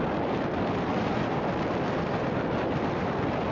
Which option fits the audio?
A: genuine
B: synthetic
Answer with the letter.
A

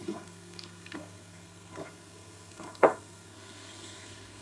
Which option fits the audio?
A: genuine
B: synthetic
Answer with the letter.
B